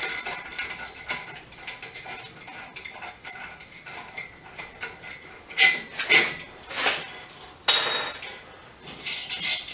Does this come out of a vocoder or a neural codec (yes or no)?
no